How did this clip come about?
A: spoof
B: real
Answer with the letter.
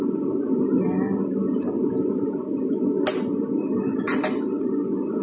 B